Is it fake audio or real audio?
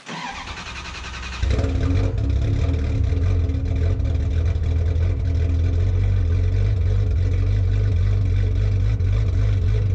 real